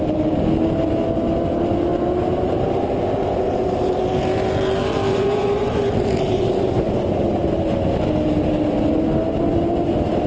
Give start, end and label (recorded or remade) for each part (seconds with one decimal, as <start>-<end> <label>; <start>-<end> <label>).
0.0-5.1 recorded; 5.1-5.9 remade; 5.9-10.3 recorded